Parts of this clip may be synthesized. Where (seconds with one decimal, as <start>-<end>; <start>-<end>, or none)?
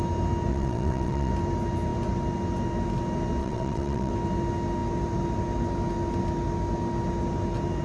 0.5-1.3; 3.4-4.1